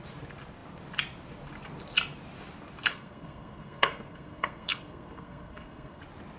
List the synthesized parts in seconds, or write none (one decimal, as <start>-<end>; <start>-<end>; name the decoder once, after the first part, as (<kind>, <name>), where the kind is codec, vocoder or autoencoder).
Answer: 2.9-6.0 (codec, SNAC)